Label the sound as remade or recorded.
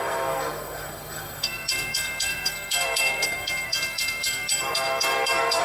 remade